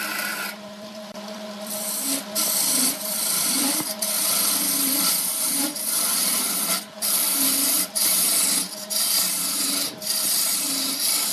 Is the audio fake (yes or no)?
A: yes